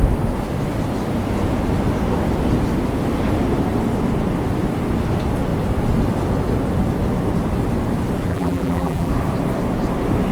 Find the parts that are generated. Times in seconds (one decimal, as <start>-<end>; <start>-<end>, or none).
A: 8.3-9.1